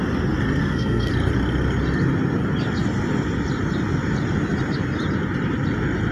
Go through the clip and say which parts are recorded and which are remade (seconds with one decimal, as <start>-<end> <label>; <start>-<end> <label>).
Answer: 0.0-0.6 recorded; 0.6-1.1 remade; 1.1-6.1 recorded